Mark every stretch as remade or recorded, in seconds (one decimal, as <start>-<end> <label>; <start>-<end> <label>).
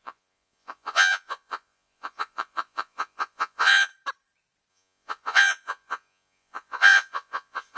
0.0-3.9 remade; 3.9-4.7 recorded; 4.7-7.8 remade